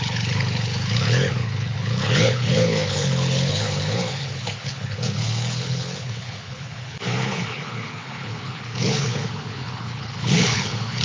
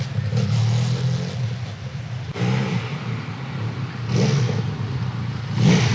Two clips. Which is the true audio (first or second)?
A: second